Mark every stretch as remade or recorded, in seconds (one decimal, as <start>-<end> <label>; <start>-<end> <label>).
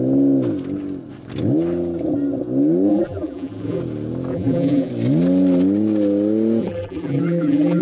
0.0-2.9 recorded; 2.9-3.8 remade; 3.8-4.3 recorded; 4.3-4.9 remade; 4.9-6.6 recorded; 6.6-7.8 remade